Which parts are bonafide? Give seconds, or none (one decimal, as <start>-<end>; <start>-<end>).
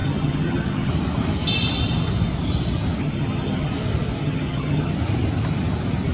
0.9-3.0; 3.7-4.2; 4.9-6.1